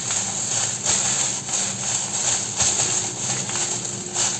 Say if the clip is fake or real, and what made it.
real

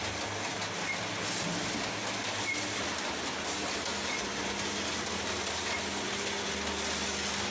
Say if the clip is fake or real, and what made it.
real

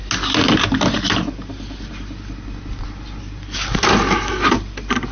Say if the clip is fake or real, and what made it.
real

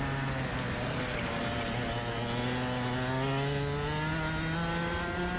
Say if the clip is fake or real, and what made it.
real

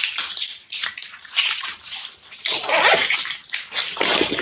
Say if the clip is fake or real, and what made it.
real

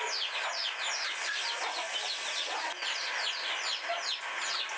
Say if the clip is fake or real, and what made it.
real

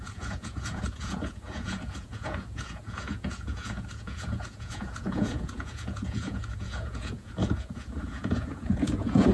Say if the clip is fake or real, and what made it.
fake, vocoder, Vocos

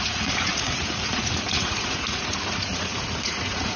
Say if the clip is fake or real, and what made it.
fake, vocoder, Vocos